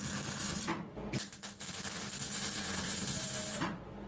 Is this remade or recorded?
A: recorded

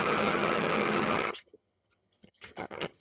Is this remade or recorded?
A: remade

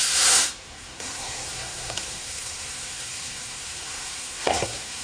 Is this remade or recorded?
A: remade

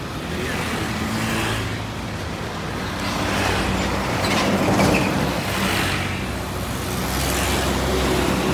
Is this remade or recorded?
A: recorded